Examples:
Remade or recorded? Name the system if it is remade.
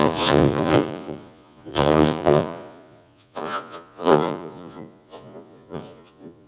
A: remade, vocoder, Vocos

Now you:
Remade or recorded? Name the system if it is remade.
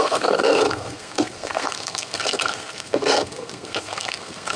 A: remade, codec, SNAC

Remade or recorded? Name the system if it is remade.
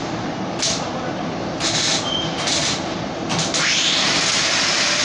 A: remade, vocoder, BigVGAN v2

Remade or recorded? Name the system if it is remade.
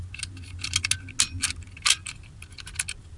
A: recorded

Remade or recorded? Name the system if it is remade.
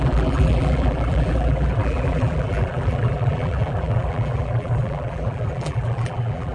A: remade, vocoder, BigVGAN v2